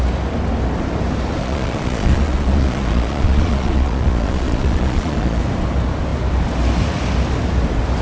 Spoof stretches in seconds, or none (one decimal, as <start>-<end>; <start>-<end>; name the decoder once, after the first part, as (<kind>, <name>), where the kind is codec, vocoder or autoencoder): 1.4-5.4 (vocoder, Vocos)